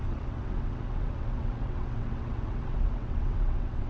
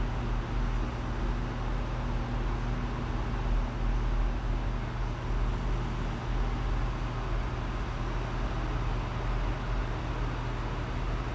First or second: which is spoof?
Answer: first